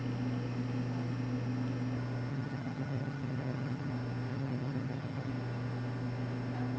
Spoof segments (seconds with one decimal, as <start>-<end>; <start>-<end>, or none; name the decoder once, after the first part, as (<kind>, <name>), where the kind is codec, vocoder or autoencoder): 2.3-3.9 (vocoder, HiFi-GAN); 4.3-5.3